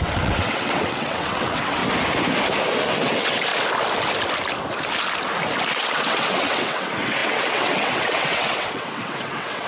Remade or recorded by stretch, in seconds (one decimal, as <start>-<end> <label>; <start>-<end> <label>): 0.0-1.8 remade; 1.8-2.8 recorded; 2.8-3.5 remade; 3.5-5.7 recorded; 5.7-9.7 remade